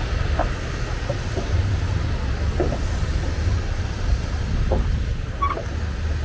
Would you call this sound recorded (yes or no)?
yes